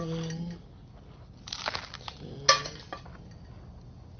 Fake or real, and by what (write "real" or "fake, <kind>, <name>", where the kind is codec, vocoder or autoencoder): real